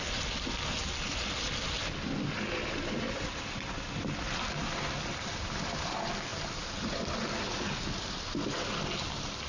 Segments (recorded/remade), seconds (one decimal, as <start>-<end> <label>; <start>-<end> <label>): 0.0-9.5 recorded